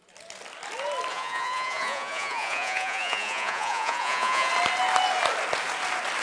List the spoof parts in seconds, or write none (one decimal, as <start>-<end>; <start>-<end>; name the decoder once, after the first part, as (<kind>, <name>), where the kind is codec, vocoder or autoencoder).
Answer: 1.1-4.5 (vocoder, Vocos)